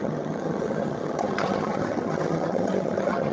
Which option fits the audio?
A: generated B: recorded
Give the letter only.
A